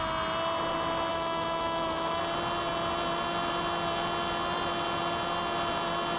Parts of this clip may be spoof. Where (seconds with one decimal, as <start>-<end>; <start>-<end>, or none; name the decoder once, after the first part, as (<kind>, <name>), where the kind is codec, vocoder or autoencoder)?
1.1-2.2 (autoencoder, DAC-VAE)